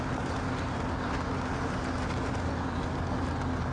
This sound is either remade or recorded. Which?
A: recorded